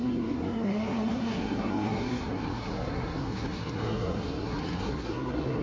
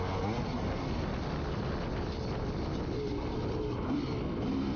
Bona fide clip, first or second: second